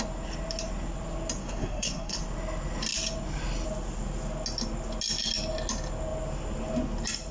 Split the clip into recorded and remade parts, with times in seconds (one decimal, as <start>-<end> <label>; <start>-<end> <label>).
0.0-1.4 recorded; 1.4-2.2 remade; 2.2-7.3 recorded